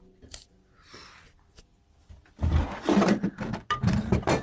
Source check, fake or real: real